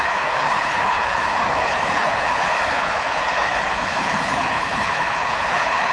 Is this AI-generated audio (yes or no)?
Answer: yes